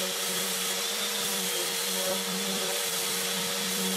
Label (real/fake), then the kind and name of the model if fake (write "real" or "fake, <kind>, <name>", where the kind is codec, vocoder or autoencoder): fake, vocoder, BigVGAN v2